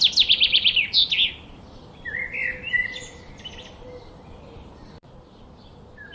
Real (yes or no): yes